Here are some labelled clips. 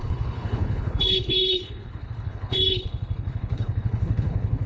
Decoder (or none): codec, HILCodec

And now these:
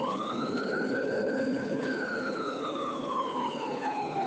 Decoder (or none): codec, HILCodec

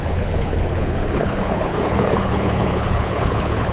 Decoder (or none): codec, HILCodec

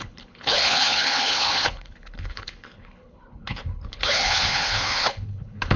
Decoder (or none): codec, HILCodec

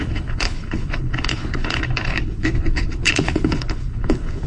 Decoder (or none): codec, HILCodec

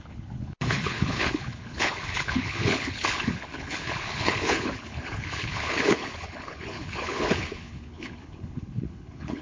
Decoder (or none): codec, HILCodec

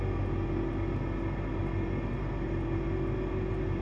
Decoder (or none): none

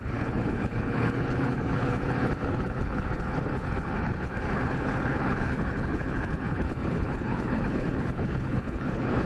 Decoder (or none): codec, HILCodec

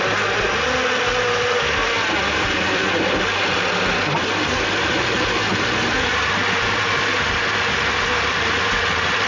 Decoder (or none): none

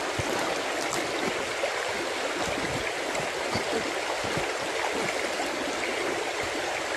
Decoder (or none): none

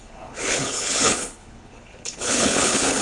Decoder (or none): codec, HILCodec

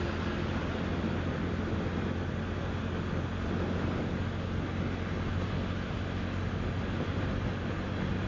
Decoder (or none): none